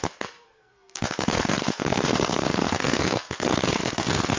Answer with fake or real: fake